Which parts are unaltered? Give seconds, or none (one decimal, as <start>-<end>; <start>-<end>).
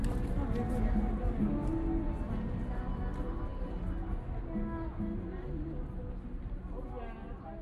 0.0-7.6